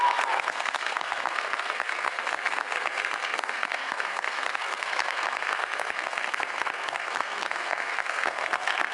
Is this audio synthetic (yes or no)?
yes